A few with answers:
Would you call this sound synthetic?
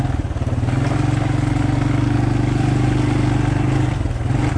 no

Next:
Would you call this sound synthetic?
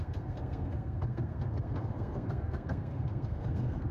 yes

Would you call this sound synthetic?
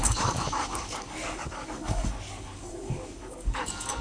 yes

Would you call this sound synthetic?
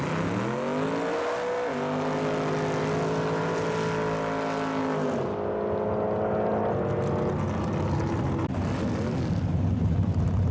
no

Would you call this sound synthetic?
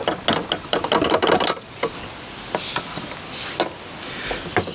no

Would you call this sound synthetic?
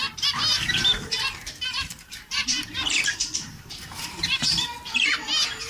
yes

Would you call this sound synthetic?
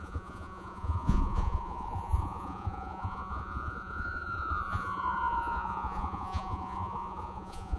yes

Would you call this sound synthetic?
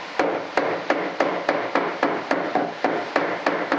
yes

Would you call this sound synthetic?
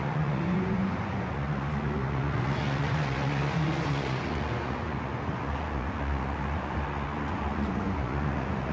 yes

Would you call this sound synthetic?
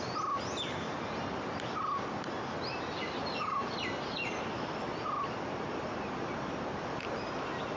no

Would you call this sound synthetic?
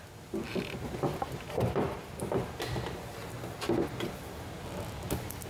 no